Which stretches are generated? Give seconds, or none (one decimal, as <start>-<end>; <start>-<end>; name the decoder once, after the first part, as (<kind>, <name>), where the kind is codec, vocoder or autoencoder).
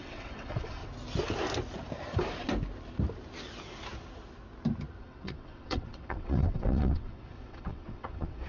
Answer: 0.0-0.8 (vocoder, WaveNeXt); 5.0-8.5